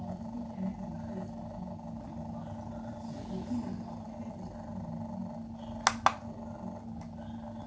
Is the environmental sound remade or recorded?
recorded